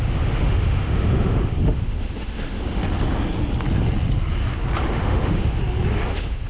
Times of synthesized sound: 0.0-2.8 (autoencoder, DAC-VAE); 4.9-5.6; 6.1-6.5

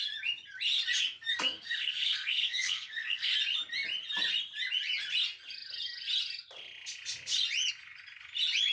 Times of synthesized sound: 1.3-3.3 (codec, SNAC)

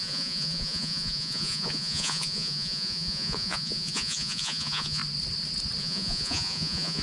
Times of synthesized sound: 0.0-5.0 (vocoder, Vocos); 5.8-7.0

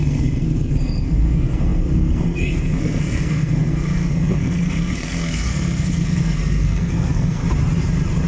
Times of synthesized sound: 0.0-7.4 (codec, SNAC)

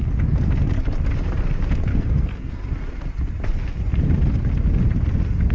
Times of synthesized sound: 1.9-2.5 (codec, SNAC)